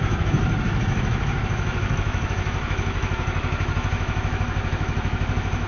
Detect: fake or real fake